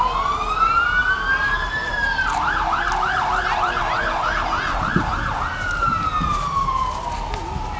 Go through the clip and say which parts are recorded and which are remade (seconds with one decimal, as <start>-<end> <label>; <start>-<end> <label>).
0.0-1.0 recorded; 1.0-4.9 remade; 4.9-7.8 recorded